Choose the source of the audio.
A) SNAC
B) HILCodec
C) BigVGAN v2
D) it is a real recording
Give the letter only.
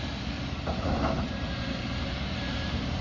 C